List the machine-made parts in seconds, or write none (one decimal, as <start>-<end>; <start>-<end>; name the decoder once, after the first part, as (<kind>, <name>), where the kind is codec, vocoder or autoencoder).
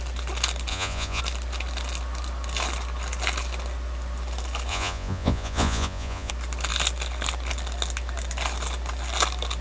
0.7-1.2 (vocoder, Vocos); 4.7-6.3